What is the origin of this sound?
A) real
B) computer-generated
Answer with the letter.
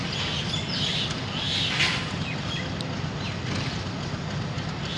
A